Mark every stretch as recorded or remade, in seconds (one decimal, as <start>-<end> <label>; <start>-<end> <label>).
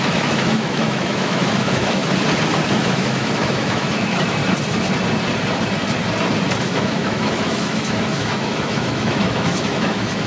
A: 0.0-2.0 remade; 2.0-2.7 recorded; 2.7-4.4 remade; 4.4-6.6 recorded; 6.6-10.3 remade